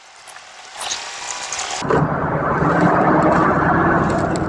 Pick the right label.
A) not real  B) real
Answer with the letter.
B